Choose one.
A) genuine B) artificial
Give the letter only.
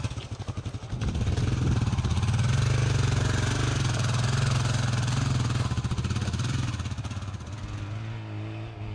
A